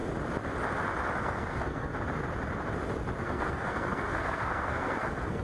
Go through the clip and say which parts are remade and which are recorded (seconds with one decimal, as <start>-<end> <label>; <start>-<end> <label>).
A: 0.0-1.2 recorded; 1.2-1.9 remade; 1.9-3.2 recorded; 3.2-5.4 remade